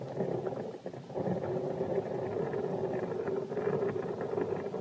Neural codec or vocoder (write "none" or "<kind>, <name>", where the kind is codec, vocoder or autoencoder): none